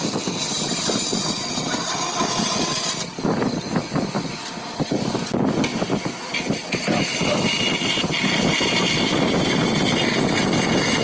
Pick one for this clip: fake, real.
real